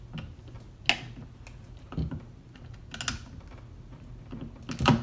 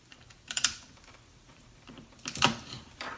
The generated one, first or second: second